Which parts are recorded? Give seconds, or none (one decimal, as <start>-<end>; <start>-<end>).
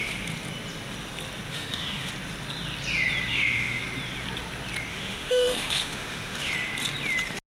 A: 0.0-1.5; 2.1-3.3; 3.8-4.9; 6.5-7.6